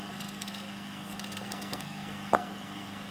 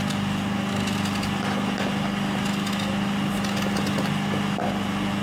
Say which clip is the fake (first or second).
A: first